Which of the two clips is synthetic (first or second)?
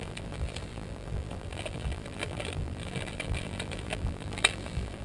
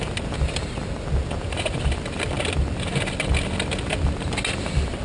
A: first